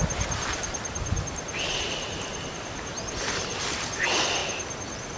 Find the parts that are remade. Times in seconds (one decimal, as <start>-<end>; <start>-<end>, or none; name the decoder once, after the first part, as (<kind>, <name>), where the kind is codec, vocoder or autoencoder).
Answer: none